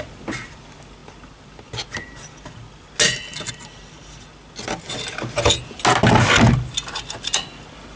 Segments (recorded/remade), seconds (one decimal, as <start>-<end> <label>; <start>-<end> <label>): 0.0-8.0 recorded